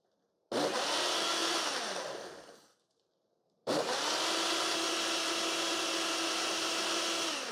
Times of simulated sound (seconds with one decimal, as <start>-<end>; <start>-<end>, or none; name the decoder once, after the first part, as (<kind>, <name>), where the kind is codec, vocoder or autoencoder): 1.4-3.7 (vocoder, BigVGAN v2)